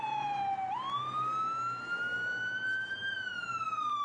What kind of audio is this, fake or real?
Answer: real